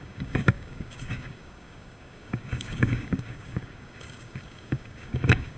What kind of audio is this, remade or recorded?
remade